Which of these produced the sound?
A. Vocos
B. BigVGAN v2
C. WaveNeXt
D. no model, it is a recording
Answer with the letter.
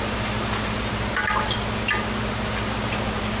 D